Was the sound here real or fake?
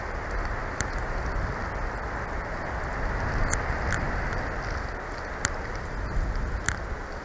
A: real